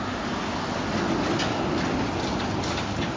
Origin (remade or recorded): recorded